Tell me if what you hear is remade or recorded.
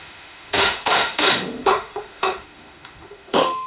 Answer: remade